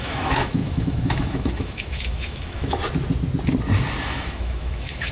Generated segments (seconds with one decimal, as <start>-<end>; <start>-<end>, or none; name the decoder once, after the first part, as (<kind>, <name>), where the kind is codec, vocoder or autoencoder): 0.0-2.8 (autoencoder, DAC-VAE); 4.0-5.1